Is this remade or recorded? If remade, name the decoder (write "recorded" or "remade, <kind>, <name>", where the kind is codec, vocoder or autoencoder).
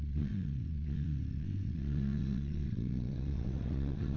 remade, vocoder, WaveNeXt